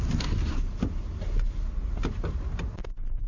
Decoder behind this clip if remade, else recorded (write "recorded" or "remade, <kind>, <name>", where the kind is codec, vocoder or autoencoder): recorded